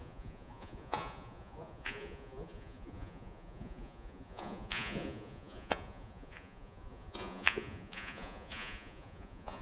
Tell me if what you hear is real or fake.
fake